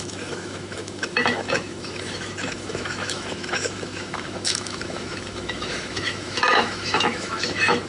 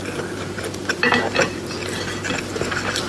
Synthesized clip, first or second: first